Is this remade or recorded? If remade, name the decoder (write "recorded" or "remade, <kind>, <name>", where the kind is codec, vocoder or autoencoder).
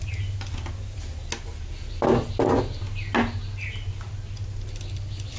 recorded